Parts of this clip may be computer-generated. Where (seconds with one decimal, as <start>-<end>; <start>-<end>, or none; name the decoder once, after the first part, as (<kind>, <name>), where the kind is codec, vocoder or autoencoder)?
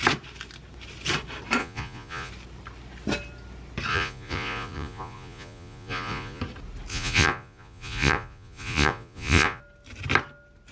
1.6-2.3 (vocoder, Vocos); 3.9-6.4; 6.9-9.6